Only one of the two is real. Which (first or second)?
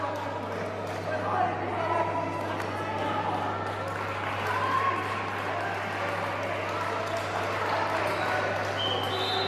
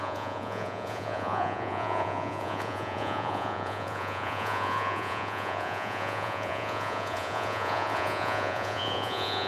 first